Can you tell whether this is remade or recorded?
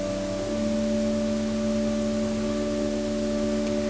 recorded